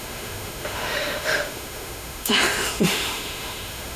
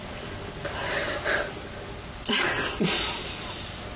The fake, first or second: first